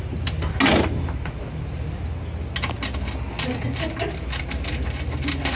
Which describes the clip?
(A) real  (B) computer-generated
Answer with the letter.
A